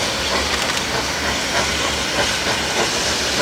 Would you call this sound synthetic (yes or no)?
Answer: no